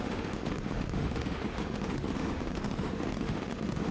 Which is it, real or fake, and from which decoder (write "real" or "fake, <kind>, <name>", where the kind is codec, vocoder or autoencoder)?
fake, autoencoder, DAC-VAE